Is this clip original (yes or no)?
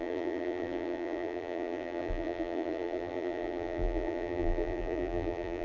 no